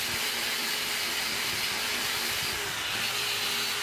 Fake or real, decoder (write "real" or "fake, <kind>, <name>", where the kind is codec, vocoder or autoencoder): real